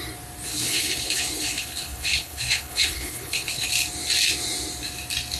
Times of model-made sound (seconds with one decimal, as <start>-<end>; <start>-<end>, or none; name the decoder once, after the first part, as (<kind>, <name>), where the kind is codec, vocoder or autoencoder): 0.5-3.7 (codec, HILCodec)